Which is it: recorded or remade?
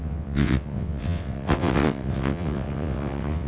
remade